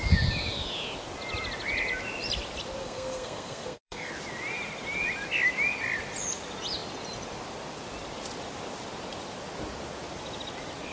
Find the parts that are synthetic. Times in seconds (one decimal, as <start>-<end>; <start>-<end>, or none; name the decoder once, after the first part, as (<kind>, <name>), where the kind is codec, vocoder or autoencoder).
2.8-4.1 (codec, SNAC)